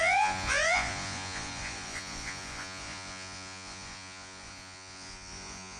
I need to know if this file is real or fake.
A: fake